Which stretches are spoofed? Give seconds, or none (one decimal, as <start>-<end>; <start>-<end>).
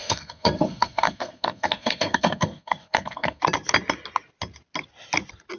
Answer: 0.0-3.4